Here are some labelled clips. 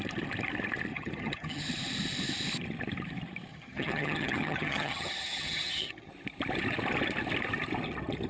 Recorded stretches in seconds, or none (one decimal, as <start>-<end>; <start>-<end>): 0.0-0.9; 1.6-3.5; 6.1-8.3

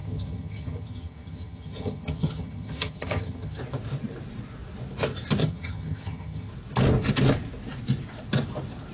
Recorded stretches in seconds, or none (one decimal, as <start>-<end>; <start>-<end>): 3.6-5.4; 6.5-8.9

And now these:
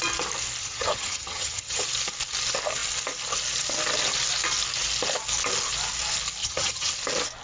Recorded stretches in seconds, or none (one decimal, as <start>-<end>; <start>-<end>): 0.0-0.6; 1.8-6.4; 6.9-7.4